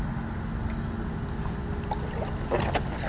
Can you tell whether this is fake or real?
real